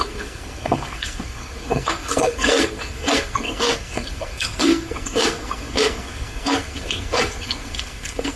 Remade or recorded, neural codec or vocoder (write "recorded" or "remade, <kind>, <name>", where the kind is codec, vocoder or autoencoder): remade, codec, SNAC